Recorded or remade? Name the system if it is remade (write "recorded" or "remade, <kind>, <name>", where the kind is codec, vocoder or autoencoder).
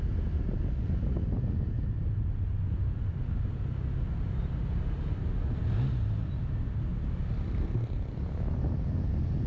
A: recorded